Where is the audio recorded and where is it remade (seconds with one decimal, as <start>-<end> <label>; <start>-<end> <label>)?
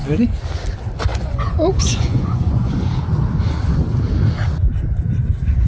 0.0-1.1 recorded; 1.1-2.9 remade; 2.9-5.7 recorded